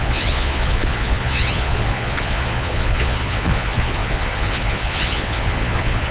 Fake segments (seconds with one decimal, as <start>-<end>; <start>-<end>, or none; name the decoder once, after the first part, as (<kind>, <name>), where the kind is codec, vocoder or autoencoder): 0.0-6.1 (vocoder, Vocos)